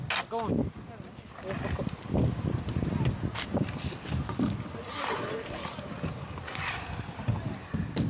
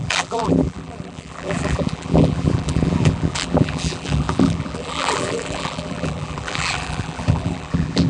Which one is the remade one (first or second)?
second